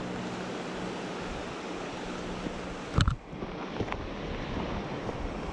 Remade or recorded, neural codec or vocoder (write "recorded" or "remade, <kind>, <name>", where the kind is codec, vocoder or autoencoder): recorded